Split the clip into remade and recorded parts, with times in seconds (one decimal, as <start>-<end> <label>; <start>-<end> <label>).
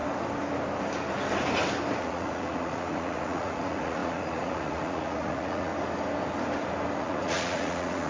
0.0-2.0 recorded; 2.0-5.7 remade; 5.7-7.0 recorded; 7.0-8.1 remade